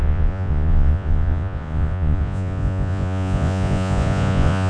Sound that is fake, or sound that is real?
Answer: fake